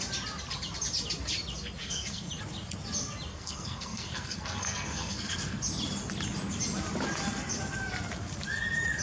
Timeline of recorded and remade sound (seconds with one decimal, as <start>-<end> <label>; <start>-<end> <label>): 0.0-1.8 recorded; 1.8-2.3 remade; 2.3-3.3 recorded; 3.3-5.6 remade; 5.6-9.0 recorded